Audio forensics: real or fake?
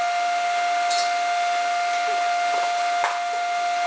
real